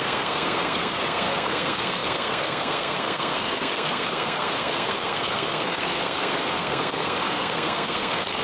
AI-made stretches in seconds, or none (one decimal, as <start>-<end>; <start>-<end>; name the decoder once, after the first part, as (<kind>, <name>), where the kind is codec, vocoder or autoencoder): 0.0-8.4 (codec, SNAC)

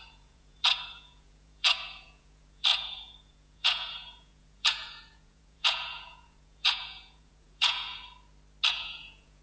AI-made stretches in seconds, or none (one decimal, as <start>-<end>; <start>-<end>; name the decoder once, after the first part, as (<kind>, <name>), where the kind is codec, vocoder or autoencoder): 0.0-8.0 (vocoder, Vocos); 8.7-9.4

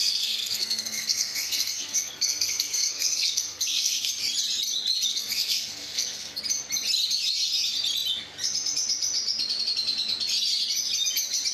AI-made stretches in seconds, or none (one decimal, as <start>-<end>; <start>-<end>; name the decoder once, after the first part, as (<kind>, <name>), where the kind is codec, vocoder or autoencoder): 0.0-4.1 (codec, SNAC); 5.1-6.4